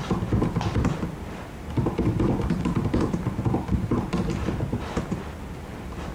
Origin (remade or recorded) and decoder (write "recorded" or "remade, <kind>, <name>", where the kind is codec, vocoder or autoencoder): recorded